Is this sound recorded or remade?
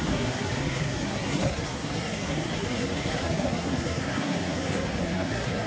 remade